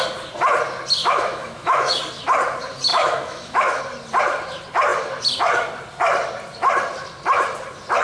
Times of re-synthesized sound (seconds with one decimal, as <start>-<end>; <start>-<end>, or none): 1.0-2.0; 2.9-3.8